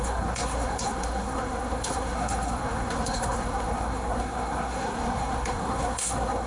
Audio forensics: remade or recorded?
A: remade